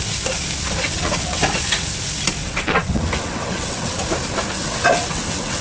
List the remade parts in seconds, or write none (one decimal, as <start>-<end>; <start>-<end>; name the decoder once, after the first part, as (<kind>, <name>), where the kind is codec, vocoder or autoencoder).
0.8-1.4 (vocoder, WaveNeXt); 2.4-4.0; 4.6-5.6